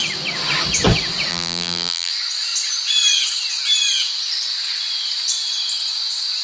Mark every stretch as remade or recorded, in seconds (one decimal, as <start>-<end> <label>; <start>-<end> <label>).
0.0-1.3 recorded; 1.3-2.1 remade; 2.1-6.4 recorded